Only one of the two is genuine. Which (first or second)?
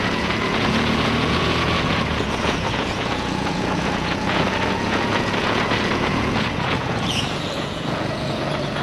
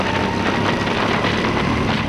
second